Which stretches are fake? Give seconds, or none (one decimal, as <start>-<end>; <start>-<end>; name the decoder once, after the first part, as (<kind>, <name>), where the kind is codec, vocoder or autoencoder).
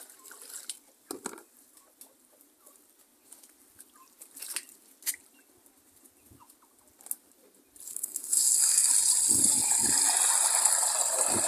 7.9-8.9 (codec, SNAC)